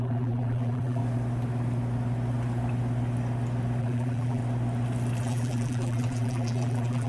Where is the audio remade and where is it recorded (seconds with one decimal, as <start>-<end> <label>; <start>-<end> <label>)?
0.0-1.0 remade; 1.0-3.8 recorded; 3.8-4.4 remade; 4.4-5.2 recorded; 5.2-7.1 remade